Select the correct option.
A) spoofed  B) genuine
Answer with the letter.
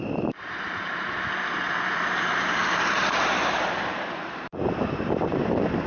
A